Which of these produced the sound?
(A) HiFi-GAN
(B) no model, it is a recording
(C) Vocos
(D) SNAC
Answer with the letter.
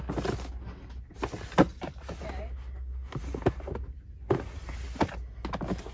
B